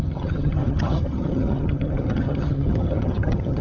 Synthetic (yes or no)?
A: yes